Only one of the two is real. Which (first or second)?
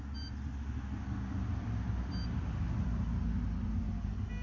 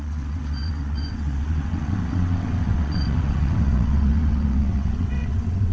first